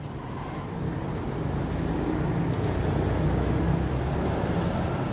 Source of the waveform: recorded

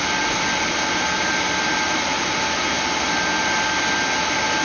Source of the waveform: recorded